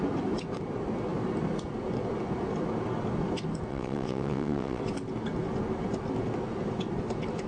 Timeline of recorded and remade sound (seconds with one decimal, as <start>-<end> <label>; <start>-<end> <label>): 0.0-3.7 recorded; 3.7-4.8 remade; 4.8-7.5 recorded